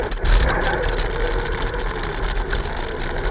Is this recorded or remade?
recorded